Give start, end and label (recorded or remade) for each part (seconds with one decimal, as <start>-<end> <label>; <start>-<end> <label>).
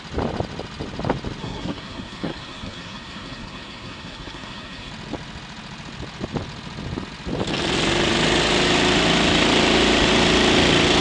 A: 0.0-1.4 recorded; 1.4-4.9 remade; 4.9-11.0 recorded